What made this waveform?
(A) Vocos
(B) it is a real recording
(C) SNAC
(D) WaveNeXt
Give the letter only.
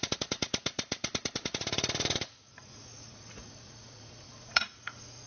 A